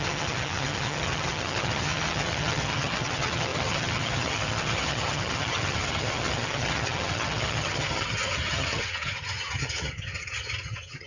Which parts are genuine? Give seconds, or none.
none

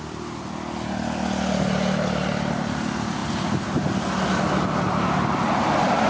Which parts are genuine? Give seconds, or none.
0.0-6.1

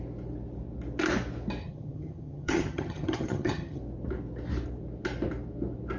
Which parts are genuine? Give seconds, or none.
0.0-1.6; 3.8-6.0